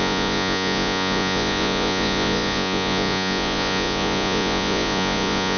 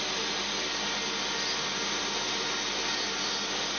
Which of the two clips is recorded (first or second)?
second